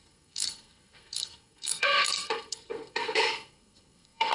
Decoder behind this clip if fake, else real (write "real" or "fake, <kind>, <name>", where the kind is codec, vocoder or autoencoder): fake, codec, SNAC